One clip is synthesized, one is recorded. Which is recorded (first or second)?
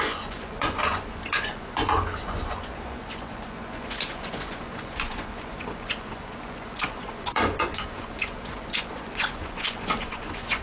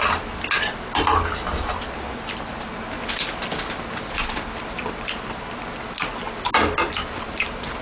second